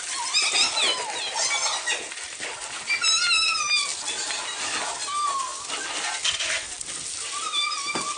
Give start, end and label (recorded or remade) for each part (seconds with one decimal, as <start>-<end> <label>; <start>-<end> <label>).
0.0-8.2 recorded